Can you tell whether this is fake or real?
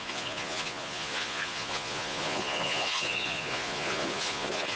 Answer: fake